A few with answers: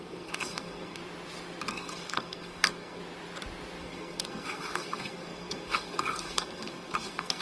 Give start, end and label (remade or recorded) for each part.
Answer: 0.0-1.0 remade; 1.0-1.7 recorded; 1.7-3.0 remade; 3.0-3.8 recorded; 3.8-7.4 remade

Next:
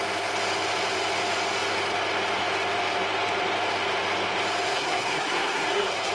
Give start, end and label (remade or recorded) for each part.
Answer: 0.0-4.7 recorded; 4.7-6.1 remade